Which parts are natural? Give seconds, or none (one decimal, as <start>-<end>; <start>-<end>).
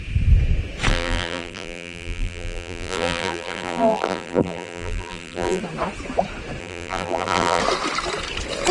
0.0-0.9; 5.6-6.6; 7.6-8.7